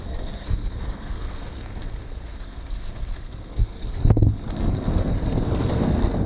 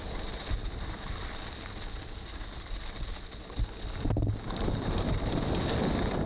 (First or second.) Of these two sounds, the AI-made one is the first